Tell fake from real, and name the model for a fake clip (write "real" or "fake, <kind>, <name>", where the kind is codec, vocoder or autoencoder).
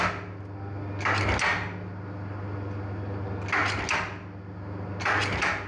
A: real